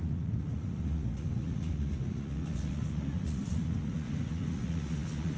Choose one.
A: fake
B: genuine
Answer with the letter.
A